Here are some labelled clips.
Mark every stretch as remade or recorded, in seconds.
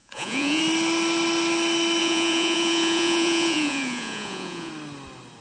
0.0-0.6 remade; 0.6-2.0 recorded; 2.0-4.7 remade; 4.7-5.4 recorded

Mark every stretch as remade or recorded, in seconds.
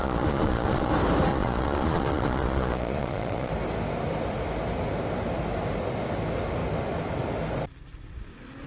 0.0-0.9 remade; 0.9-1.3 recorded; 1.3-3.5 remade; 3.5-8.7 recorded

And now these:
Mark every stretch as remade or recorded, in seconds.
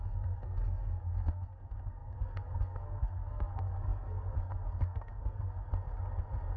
0.0-5.7 remade; 5.7-6.6 recorded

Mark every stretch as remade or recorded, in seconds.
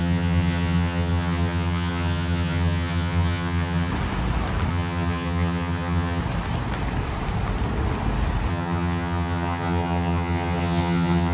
0.0-3.9 remade; 3.9-4.7 recorded; 4.7-6.2 remade; 6.2-8.5 recorded; 8.5-11.3 remade